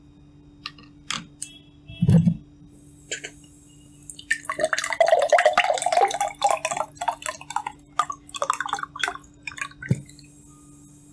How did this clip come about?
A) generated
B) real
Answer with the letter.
B